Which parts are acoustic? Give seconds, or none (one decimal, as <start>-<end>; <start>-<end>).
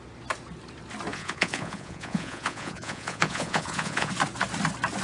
0.0-1.1; 4.1-5.0